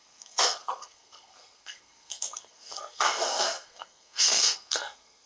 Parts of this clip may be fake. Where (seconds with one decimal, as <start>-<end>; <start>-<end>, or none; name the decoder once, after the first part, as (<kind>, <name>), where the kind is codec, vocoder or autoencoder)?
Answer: 0.0-5.3 (codec, SNAC)